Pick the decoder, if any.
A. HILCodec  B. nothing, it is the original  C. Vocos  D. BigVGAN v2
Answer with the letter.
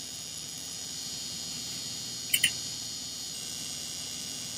D